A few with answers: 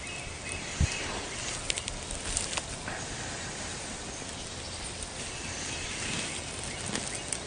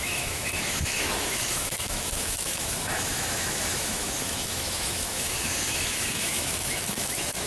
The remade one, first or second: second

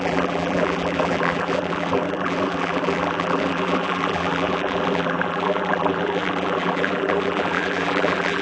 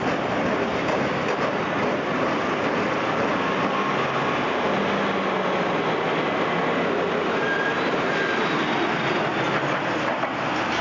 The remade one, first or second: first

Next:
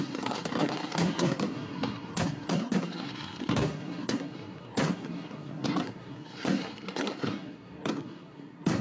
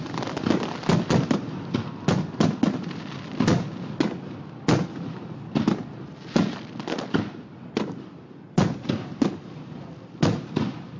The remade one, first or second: first